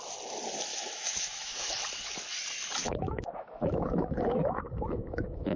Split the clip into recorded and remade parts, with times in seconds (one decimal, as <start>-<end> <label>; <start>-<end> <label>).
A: 0.0-0.7 recorded; 0.7-1.7 remade; 1.7-2.8 recorded; 2.8-5.6 remade